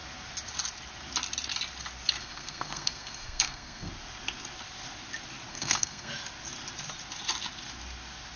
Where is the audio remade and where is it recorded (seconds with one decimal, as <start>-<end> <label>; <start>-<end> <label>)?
0.0-2.2 recorded; 2.2-3.9 remade; 3.9-5.5 recorded; 5.5-6.1 remade; 6.1-8.4 recorded